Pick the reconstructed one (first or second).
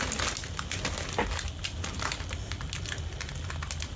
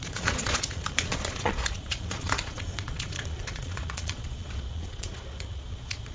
second